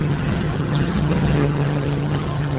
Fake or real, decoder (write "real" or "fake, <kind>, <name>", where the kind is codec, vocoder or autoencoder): fake, vocoder, HiFi-GAN